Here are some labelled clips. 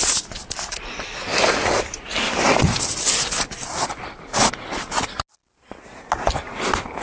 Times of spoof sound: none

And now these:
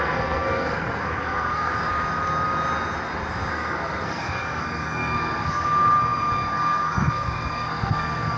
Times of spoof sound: 0.0-1.7 (codec, SNAC); 3.5-8.4

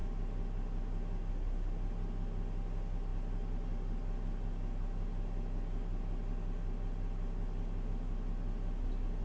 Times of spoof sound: none